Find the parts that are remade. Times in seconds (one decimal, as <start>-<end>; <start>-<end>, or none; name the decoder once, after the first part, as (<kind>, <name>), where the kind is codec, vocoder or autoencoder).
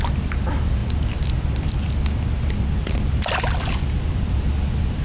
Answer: none